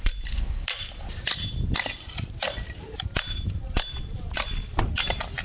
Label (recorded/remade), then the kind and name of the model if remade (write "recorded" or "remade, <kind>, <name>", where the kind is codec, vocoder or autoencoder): recorded